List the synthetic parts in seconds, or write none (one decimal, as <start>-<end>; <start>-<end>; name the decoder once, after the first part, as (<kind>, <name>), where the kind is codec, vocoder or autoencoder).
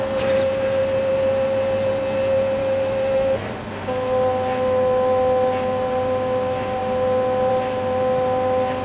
2.6-3.5 (autoencoder, DAC-VAE)